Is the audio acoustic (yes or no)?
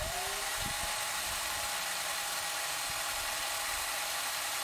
no